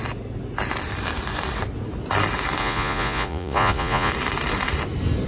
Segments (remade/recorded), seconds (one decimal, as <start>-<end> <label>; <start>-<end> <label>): 0.0-2.6 recorded; 2.6-4.1 remade; 4.1-5.3 recorded